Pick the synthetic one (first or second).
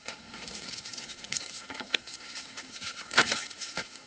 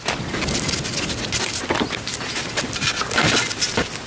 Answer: first